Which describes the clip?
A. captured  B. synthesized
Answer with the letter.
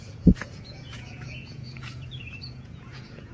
B